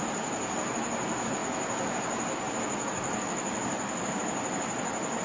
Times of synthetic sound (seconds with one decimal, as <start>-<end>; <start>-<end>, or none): none